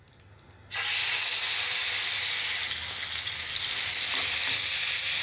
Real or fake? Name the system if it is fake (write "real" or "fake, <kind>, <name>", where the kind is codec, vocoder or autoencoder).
real